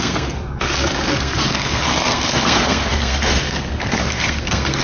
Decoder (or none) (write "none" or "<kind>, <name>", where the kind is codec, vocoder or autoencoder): codec, SNAC